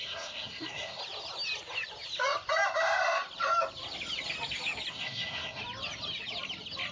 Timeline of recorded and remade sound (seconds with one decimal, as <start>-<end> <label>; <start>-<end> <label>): 0.0-1.0 remade; 1.0-4.9 recorded; 4.9-5.6 remade; 5.6-6.9 recorded